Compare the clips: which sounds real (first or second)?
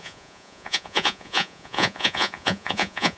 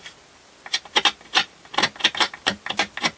second